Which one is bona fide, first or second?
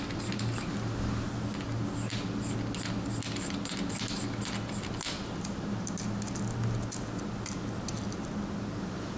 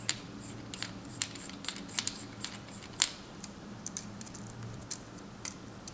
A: first